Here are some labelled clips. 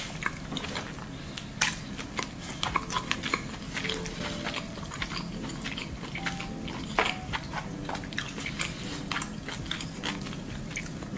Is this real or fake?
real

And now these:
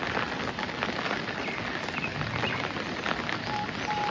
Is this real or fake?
real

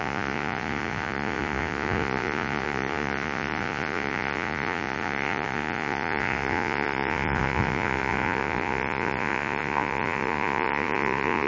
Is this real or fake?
fake